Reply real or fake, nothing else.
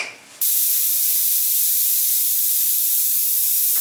fake